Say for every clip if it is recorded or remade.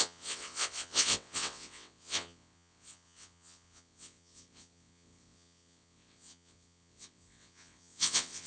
remade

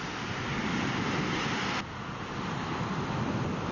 recorded